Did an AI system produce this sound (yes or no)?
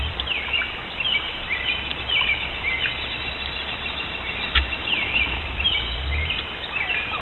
yes